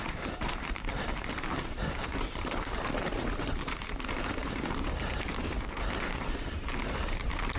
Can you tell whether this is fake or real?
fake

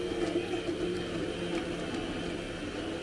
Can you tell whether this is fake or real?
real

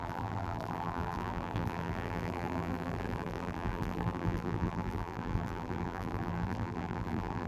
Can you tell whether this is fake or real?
fake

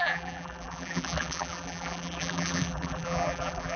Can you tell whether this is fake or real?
fake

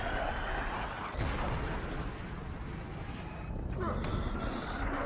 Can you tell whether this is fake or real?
real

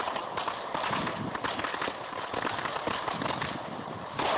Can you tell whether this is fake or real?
real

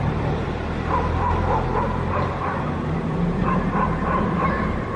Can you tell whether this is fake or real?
fake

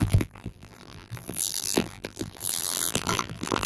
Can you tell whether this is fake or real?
fake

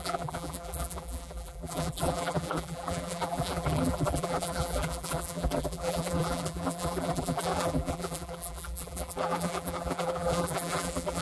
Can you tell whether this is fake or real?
fake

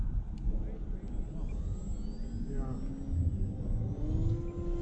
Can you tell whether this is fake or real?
real